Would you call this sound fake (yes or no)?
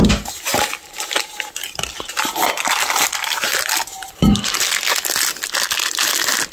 no